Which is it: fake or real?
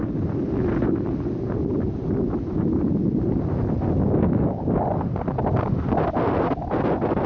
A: real